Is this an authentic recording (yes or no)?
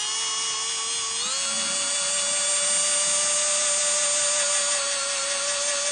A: yes